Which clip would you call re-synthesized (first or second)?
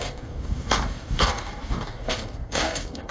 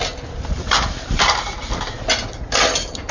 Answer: first